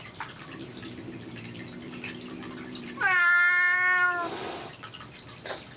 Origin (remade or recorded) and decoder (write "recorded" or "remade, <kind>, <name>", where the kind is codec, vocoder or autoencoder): recorded